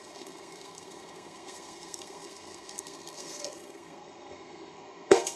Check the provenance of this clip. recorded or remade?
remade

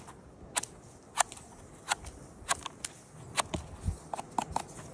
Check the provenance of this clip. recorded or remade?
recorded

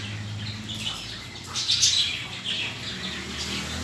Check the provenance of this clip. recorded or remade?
recorded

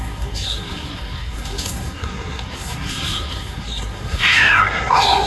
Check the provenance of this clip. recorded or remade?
remade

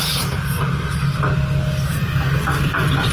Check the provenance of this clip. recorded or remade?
recorded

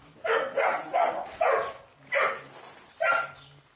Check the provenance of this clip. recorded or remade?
recorded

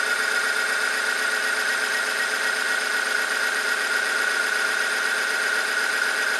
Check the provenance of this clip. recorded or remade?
recorded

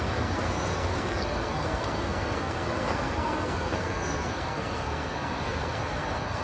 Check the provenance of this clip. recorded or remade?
remade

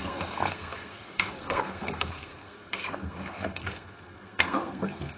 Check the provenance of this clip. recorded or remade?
remade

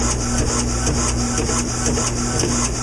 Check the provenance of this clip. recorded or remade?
recorded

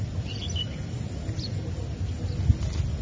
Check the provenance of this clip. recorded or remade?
recorded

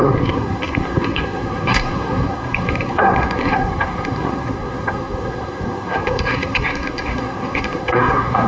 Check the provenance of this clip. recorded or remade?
remade